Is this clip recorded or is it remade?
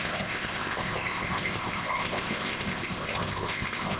remade